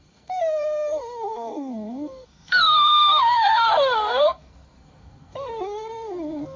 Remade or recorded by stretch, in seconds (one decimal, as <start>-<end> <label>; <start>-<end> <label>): 0.0-6.6 remade